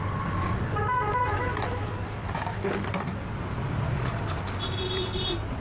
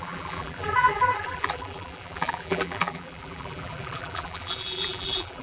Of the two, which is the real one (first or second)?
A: first